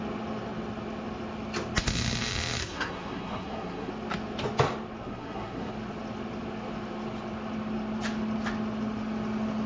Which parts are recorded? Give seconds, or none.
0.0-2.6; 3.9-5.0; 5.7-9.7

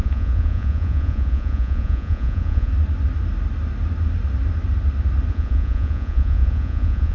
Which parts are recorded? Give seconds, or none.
2.7-5.3

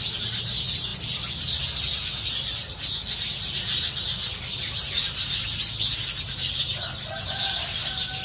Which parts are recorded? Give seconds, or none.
0.0-8.2

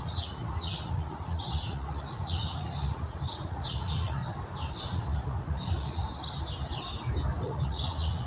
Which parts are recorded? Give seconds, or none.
4.2-4.8; 6.2-7.4

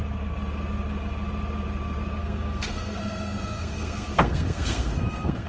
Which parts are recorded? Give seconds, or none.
0.0-2.2

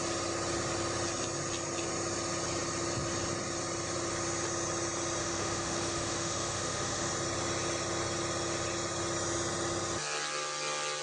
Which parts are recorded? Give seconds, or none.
0.0-5.2; 7.1-11.0

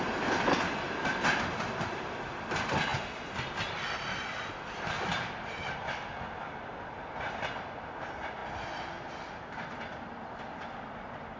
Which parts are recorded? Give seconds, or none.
0.0-11.4

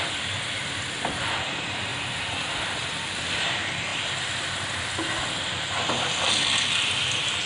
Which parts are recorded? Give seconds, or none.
0.0-7.5